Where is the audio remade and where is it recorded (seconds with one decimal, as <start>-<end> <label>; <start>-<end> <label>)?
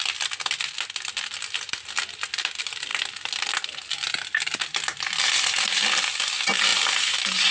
0.0-7.5 recorded